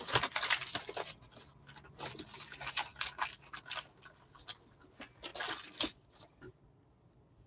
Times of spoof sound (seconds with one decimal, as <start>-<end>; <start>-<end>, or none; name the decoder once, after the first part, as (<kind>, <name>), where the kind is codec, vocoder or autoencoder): none